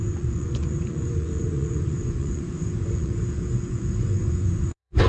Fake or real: fake